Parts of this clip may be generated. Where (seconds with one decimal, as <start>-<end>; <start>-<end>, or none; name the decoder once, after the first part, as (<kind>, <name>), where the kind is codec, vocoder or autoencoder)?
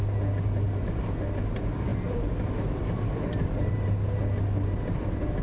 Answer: 1.9-3.7 (vocoder, BigVGAN v2)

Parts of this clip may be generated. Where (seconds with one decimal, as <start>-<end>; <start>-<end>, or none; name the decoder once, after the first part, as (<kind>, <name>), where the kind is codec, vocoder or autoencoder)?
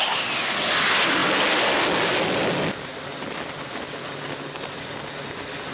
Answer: none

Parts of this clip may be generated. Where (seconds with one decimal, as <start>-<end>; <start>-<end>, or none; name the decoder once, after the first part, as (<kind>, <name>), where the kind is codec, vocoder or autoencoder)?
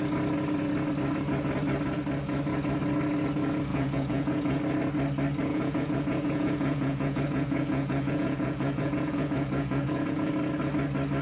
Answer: 3.7-4.6 (vocoder, Vocos); 5.5-10.3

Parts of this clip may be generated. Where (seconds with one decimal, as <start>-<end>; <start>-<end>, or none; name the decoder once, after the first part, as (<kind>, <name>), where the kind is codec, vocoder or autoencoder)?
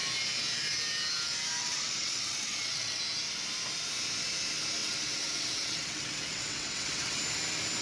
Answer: 1.6-3.0 (vocoder, WaveNeXt); 4.8-7.2